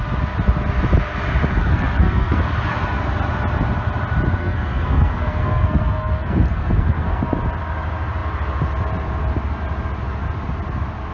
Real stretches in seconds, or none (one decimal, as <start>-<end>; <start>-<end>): 0.0-1.6; 2.4-4.4; 7.2-11.1